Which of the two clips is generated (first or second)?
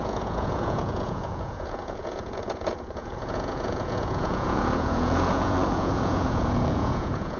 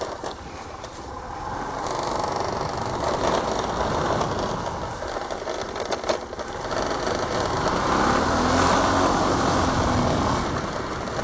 first